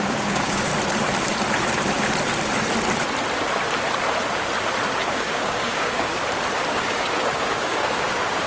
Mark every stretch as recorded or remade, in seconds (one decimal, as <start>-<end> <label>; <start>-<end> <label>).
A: 0.0-0.7 remade; 0.7-5.1 recorded; 5.1-6.1 remade; 6.1-6.7 recorded; 6.7-8.5 remade